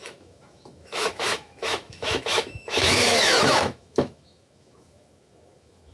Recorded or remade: remade